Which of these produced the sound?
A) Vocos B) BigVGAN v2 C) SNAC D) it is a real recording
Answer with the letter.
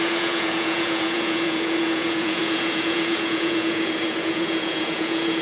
A